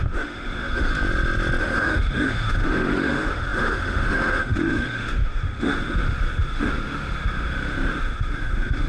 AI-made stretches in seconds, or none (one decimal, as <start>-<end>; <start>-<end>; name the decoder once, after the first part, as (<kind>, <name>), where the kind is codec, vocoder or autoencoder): 0.0-0.9 (autoencoder, DAC-VAE); 1.6-8.9